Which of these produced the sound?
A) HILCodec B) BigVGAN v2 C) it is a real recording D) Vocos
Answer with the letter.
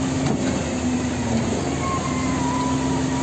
C